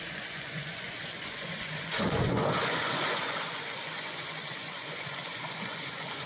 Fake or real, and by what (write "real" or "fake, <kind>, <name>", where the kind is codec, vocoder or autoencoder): fake, vocoder, Vocos